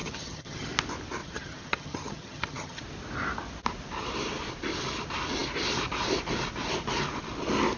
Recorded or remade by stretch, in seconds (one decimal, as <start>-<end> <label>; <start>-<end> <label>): 0.0-0.7 remade; 0.7-1.2 recorded; 1.2-2.8 remade; 2.8-7.8 recorded